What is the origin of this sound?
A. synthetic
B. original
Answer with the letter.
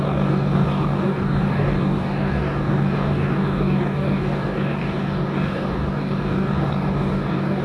A